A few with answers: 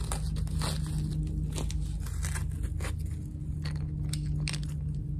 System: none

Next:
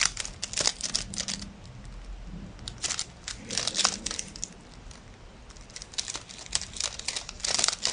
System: none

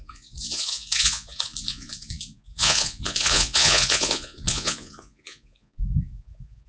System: vocoder, Vocos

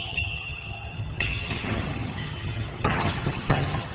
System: vocoder, HiFi-GAN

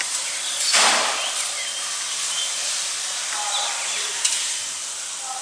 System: none